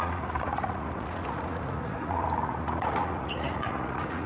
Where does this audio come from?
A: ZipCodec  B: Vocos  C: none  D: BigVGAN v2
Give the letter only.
B